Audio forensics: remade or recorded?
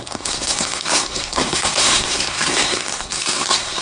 remade